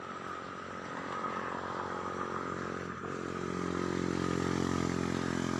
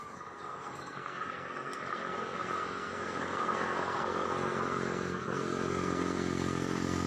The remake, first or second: second